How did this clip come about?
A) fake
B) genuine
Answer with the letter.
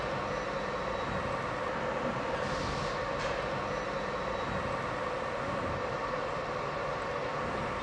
B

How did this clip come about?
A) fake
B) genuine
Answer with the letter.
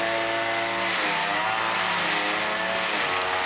B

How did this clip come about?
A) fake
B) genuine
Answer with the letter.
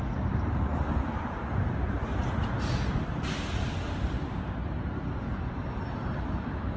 B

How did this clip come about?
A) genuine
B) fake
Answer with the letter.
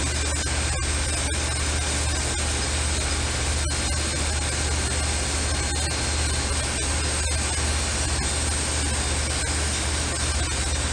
A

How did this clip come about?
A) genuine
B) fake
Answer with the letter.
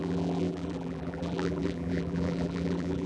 B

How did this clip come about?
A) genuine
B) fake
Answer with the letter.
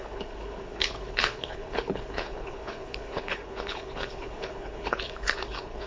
B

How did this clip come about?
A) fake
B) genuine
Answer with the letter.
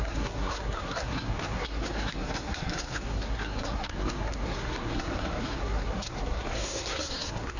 A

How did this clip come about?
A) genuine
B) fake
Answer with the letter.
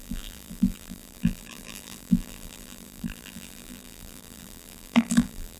B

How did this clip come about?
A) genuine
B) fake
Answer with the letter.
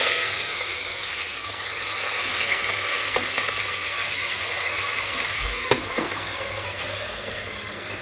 B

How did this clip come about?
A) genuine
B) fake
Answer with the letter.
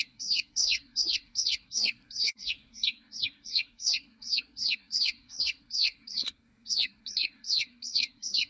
B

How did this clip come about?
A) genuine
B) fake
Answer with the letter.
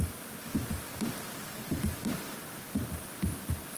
B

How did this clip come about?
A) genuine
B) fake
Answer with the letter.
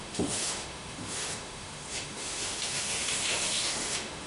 B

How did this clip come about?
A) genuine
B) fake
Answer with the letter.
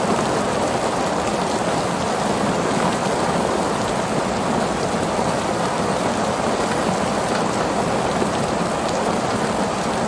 A